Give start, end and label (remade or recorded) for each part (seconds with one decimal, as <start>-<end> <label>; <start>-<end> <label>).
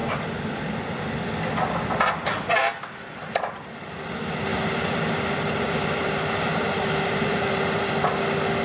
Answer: 0.0-4.5 recorded; 4.5-7.9 remade; 7.9-8.6 recorded